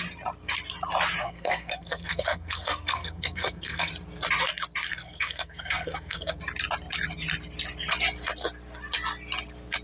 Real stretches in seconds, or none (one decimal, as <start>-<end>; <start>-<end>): 0.0-1.2; 3.9-4.9; 6.4-9.8